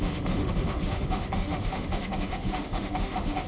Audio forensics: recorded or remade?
remade